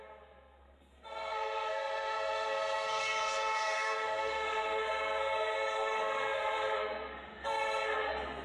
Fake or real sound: fake